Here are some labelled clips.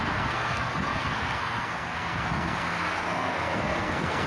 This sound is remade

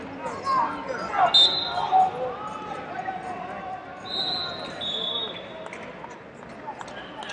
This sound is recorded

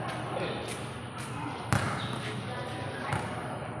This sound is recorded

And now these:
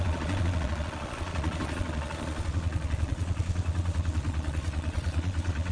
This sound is remade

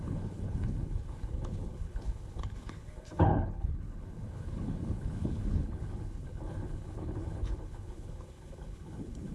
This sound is remade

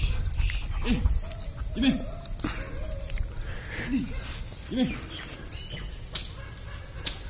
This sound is recorded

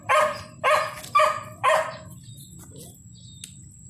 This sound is recorded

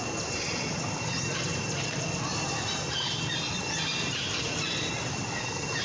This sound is recorded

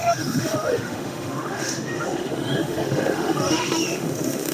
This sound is remade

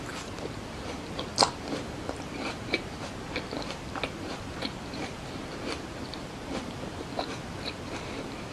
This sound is remade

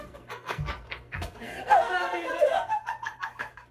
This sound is remade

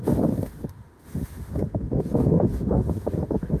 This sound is remade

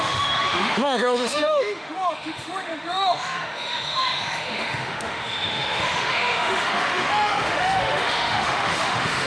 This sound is remade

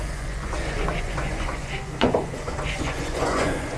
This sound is remade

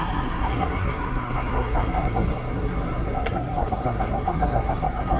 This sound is remade